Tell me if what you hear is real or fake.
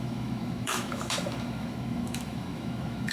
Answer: fake